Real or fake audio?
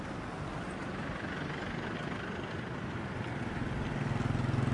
real